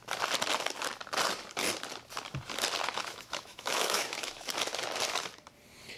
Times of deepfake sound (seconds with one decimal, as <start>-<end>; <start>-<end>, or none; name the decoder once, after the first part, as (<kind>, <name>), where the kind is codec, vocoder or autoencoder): 2.9-4.5 (autoencoder, DAC-VAE)